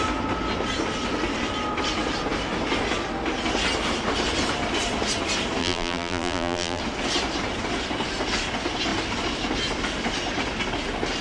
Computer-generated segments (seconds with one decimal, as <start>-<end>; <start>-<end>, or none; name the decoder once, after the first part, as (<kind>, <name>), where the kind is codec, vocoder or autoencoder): 5.6-6.8 (vocoder, BigVGAN v2)